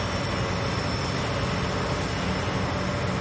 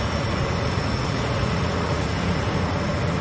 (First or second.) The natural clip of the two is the first